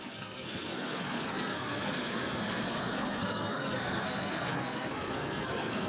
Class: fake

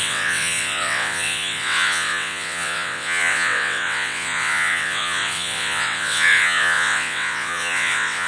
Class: fake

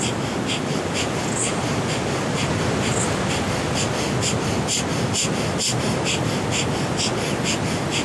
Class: real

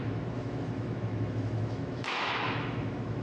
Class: fake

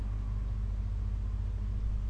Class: real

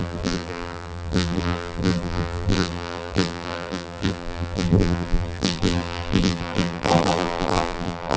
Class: fake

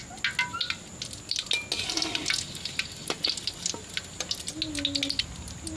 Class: real